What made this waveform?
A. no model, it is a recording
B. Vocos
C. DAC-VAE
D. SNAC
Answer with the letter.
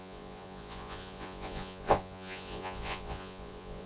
B